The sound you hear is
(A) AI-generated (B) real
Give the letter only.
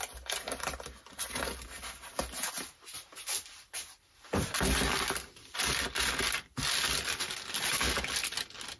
B